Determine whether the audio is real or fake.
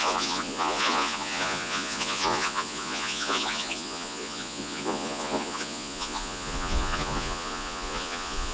fake